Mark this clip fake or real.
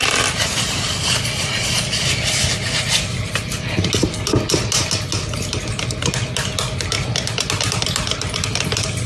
real